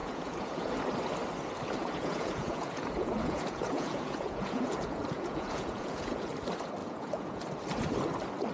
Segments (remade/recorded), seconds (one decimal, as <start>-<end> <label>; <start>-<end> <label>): 0.0-0.7 remade; 0.7-1.8 recorded; 1.8-6.3 remade; 6.3-6.8 recorded; 6.8-7.4 remade; 7.4-8.5 recorded

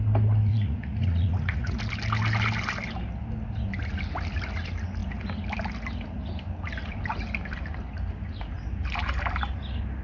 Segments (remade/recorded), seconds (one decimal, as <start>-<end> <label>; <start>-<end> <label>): 0.0-0.5 recorded; 0.5-1.8 remade; 1.8-10.0 recorded